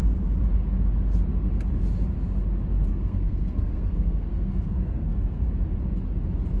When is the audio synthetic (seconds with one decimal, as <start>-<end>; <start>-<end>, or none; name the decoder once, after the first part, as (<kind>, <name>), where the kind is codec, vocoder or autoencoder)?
2.9-5.5 (codec, SNAC)